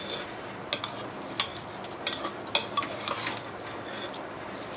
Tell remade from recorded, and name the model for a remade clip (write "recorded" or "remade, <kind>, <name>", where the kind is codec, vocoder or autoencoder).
recorded